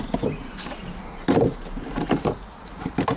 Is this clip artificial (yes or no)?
yes